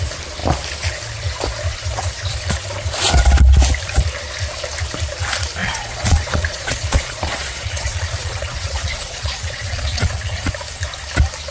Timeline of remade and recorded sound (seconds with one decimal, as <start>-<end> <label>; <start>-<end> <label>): 0.0-5.6 recorded; 5.6-10.5 remade; 10.5-11.5 recorded